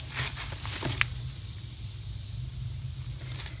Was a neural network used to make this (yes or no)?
no